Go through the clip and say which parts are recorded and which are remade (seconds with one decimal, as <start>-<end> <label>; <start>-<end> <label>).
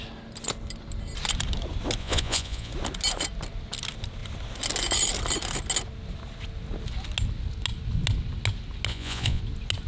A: 0.0-2.0 recorded; 2.0-2.7 remade; 2.7-8.9 recorded; 8.9-9.4 remade; 9.4-9.9 recorded